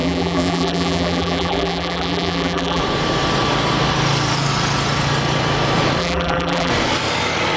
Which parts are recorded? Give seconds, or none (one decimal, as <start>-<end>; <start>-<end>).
2.8-6.0; 6.7-7.6